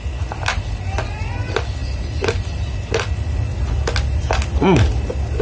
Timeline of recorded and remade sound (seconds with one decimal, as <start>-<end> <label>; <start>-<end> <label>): 0.0-5.4 recorded

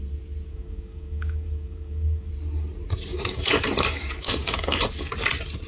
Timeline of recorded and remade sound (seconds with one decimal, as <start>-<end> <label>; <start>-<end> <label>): 0.0-0.5 recorded; 0.5-2.3 remade; 2.3-3.1 recorded; 3.1-5.1 remade; 5.1-5.7 recorded